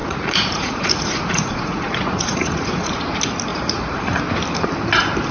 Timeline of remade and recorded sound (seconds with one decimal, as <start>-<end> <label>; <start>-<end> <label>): 0.0-3.0 remade; 3.0-3.5 recorded; 3.5-4.2 remade; 4.2-5.3 recorded